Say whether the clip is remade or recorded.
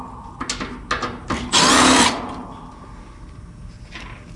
recorded